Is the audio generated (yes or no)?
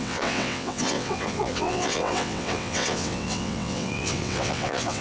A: yes